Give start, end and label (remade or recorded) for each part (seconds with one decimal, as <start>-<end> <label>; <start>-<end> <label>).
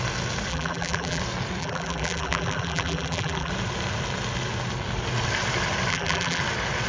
0.0-0.5 recorded; 0.5-1.2 remade; 1.2-1.6 recorded; 1.6-3.5 remade; 3.5-5.9 recorded; 5.9-6.4 remade; 6.4-6.9 recorded